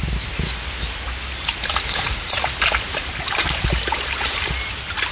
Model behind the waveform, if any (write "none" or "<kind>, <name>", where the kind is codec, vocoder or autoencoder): none